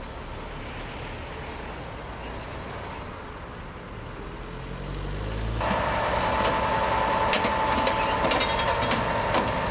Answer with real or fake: real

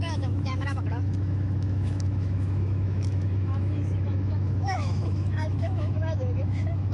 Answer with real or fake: fake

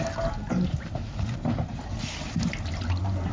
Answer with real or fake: real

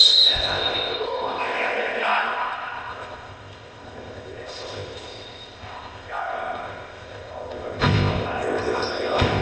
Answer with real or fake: fake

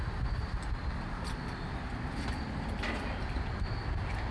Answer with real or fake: real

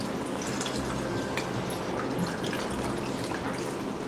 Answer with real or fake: real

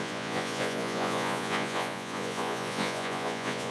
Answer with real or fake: fake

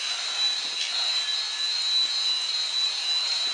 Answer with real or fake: real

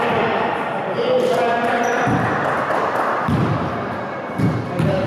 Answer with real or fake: real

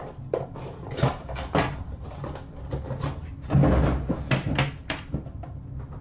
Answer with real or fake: real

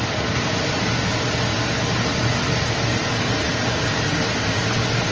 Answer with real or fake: real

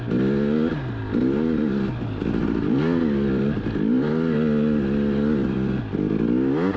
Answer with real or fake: real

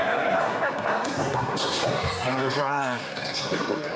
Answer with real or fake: fake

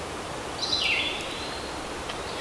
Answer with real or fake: fake